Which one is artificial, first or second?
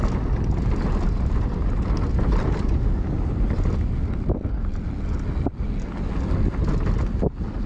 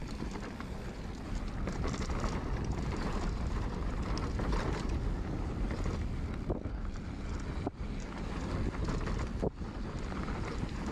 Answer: second